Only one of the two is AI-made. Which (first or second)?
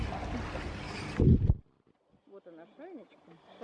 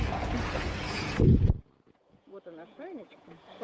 second